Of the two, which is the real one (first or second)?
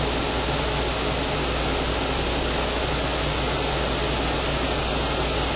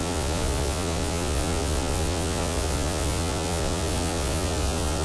first